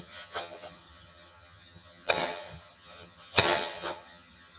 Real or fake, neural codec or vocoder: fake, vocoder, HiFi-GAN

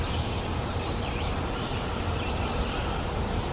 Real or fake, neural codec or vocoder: real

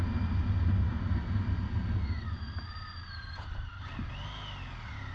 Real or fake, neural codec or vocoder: real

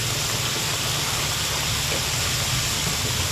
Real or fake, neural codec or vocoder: real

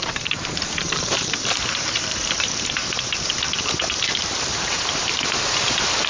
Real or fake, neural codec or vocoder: fake, vocoder, BigVGAN v2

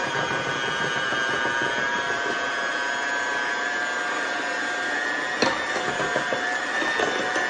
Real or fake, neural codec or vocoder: real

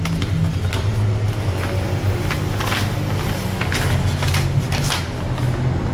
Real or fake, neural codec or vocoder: real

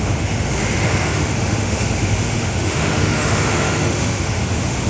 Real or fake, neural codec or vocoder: fake, autoencoder, DAC-VAE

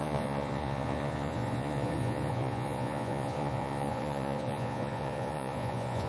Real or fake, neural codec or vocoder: fake, vocoder, Vocos